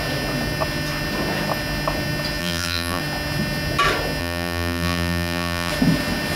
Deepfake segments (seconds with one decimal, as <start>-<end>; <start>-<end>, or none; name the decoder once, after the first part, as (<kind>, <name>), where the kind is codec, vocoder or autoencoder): 2.4-3.0 (vocoder, BigVGAN v2); 4.2-5.7